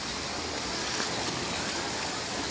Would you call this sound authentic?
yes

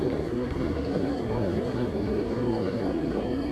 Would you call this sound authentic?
no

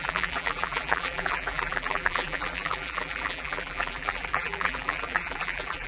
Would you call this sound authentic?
no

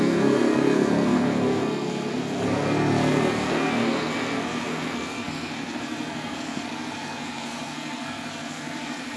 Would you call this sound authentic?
no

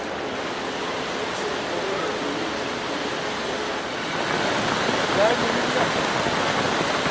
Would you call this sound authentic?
yes